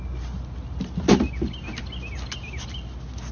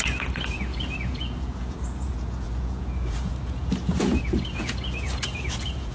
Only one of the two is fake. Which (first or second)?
second